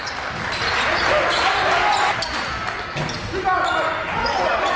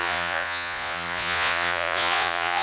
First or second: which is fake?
second